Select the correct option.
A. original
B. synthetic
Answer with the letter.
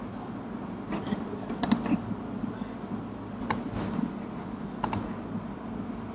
A